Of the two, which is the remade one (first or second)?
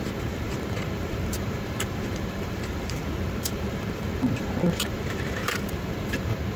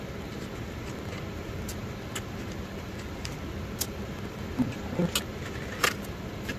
first